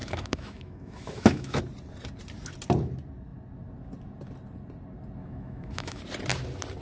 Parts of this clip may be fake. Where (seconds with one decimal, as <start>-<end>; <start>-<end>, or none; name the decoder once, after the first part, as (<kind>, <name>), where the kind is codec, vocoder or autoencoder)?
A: 0.0-1.6 (autoencoder, DAC-VAE); 5.2-6.0